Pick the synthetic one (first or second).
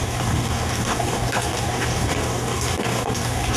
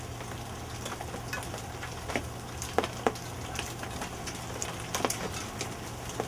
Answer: first